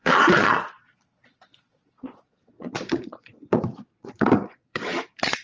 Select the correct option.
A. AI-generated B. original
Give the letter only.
A